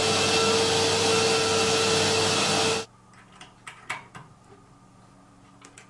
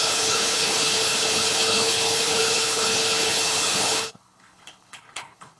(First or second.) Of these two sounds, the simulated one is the second